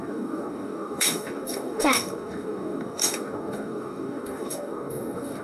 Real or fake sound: fake